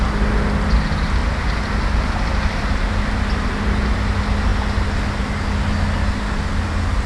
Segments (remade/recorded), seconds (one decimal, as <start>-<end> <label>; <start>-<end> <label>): 0.0-7.1 recorded